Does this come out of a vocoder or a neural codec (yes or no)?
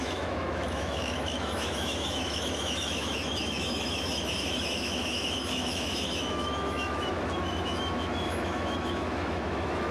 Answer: yes